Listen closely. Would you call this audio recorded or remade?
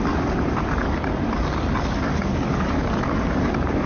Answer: recorded